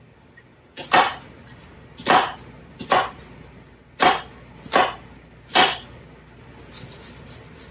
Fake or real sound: real